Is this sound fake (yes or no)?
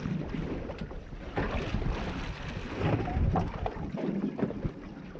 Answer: no